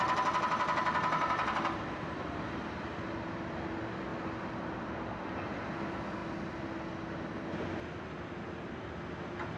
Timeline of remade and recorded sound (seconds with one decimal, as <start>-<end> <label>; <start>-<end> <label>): 0.0-9.6 recorded